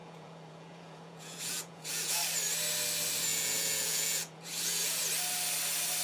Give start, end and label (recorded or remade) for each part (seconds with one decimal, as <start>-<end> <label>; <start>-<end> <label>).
0.0-2.2 remade; 2.2-3.3 recorded; 3.3-5.0 remade; 5.0-6.0 recorded